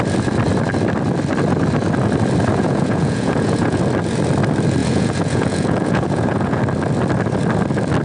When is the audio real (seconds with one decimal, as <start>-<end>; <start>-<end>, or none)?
0.0-2.5; 3.8-4.8; 6.6-8.0